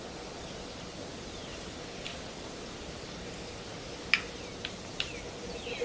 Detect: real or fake real